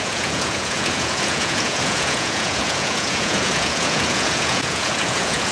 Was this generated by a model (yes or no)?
yes